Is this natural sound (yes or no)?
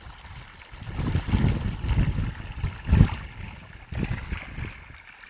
yes